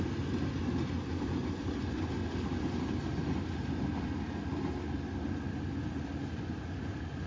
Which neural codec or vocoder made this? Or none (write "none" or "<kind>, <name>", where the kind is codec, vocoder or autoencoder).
none